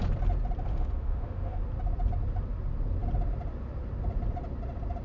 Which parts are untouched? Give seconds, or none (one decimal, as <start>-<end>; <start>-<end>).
0.0-0.7; 1.6-5.0